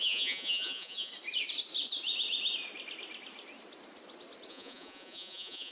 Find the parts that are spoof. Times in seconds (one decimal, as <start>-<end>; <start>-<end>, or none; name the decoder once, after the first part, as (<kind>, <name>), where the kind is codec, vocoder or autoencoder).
0.0-1.1 (vocoder, Vocos); 4.5-5.7